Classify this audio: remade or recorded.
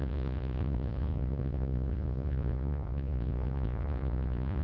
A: remade